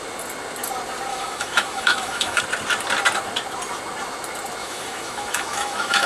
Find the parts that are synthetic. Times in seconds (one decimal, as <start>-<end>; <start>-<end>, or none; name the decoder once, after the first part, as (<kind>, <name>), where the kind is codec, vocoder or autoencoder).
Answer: 1.1-2.4 (autoencoder, DAC-VAE); 4.6-6.1